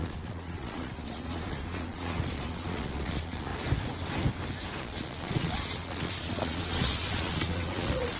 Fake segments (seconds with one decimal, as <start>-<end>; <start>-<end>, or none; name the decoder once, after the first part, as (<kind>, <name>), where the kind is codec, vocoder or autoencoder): 0.0-3.5 (vocoder, Vocos); 4.8-8.2